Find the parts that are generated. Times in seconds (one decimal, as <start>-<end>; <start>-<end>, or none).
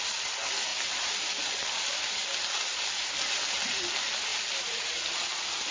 0.7-3.1; 4.3-5.0